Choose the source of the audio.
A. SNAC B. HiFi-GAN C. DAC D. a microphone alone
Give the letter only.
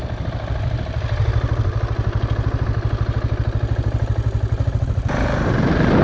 D